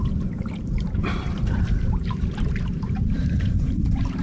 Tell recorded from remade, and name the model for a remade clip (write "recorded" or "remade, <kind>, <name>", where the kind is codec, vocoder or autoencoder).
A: remade, vocoder, BigVGAN v2